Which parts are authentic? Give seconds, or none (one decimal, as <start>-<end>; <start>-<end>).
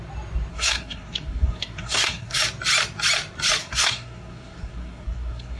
0.0-0.5; 2.4-3.6